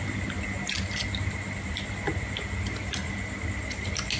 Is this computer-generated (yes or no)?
no